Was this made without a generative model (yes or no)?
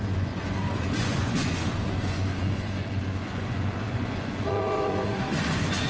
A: no